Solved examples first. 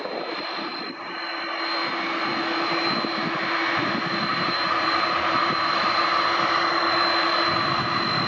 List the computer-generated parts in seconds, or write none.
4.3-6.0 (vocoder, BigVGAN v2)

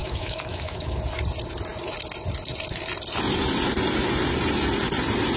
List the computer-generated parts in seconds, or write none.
0.0-1.0 (autoencoder, DAC-VAE)

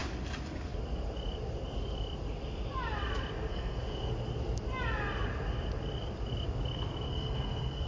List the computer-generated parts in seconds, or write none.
3.5-4.1 (codec, SNAC); 7.1-7.9